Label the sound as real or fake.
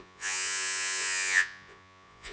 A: fake